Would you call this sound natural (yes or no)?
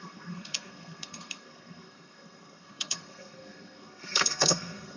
no